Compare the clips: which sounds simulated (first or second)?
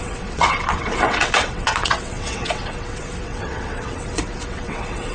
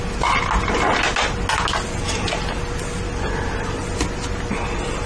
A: first